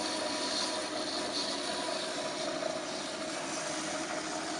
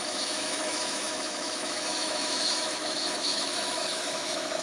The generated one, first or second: second